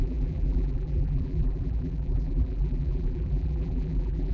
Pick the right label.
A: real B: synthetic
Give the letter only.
B